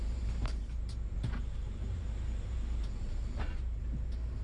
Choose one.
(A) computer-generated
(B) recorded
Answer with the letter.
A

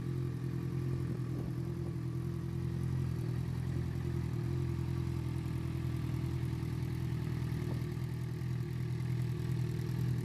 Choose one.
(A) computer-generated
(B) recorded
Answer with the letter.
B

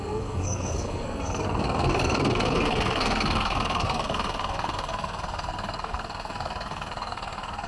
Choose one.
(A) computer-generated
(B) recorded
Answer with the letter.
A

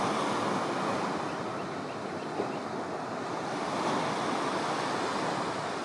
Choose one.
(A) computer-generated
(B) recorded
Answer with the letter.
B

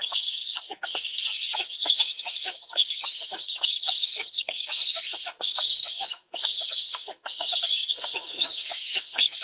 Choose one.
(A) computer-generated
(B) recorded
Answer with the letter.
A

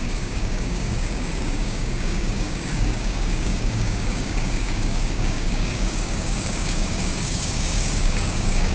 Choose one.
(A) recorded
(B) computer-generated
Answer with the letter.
B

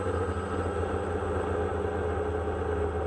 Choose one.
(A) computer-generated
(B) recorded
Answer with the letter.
B